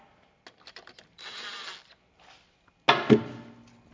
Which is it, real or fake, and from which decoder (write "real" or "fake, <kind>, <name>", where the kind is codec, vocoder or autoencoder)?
real